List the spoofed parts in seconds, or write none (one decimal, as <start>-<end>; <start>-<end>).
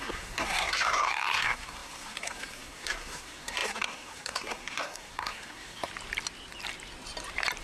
0.0-5.9